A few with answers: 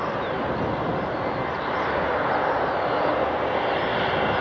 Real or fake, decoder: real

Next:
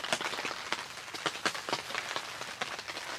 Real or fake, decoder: real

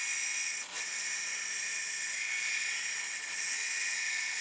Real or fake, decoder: real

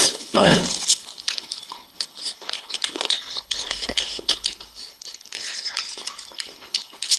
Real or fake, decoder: fake, codec, HILCodec